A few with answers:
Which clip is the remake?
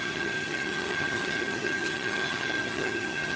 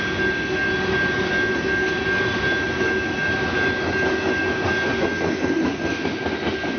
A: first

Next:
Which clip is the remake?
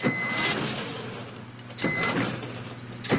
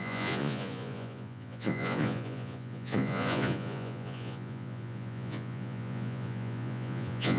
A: second